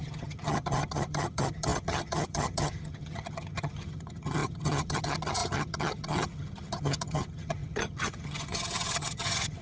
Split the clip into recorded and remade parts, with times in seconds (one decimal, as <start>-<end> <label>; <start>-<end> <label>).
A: 0.0-9.6 remade